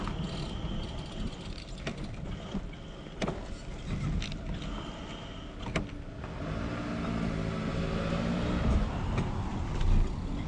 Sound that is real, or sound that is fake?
real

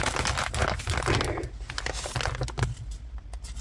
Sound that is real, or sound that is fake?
real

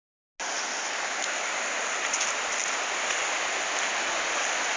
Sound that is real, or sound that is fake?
real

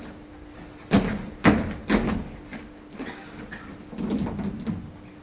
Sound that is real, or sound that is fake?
real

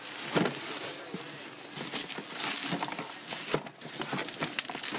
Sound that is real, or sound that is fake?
real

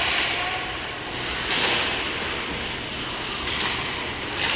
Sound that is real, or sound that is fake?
real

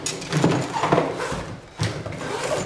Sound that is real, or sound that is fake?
real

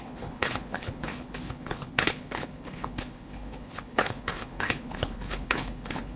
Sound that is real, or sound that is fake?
fake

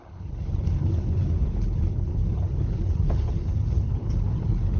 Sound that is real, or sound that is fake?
fake